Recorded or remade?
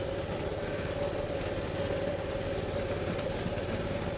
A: recorded